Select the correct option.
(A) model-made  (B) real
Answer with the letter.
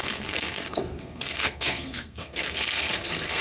A